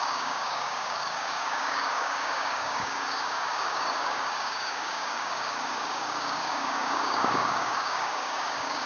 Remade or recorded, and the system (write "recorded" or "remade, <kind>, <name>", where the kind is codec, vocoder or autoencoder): remade, codec, DAC